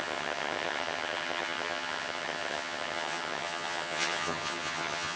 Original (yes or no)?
no